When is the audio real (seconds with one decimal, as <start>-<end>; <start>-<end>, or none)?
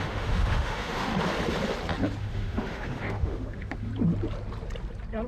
1.1-2.2; 3.9-5.3